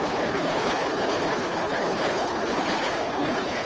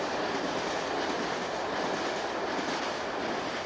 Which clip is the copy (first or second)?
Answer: first